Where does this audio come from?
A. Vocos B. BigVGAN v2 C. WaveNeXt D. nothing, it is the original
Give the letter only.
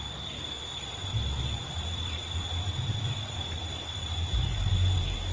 B